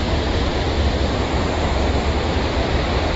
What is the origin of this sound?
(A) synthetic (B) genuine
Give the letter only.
B